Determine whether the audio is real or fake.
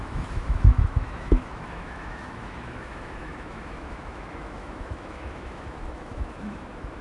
fake